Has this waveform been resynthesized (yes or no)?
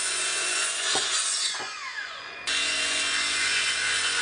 yes